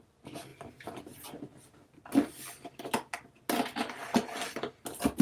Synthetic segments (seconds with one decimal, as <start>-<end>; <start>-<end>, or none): none